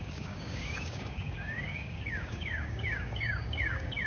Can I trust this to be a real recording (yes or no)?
no